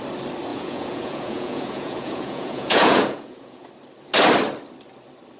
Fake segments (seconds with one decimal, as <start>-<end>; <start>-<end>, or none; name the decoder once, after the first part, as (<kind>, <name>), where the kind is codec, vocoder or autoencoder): 0.5-3.7 (vocoder, Vocos)